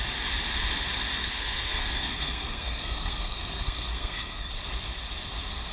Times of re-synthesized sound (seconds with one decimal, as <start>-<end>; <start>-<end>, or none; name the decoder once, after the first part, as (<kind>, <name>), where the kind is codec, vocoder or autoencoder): 1.1-4.5 (codec, SNAC)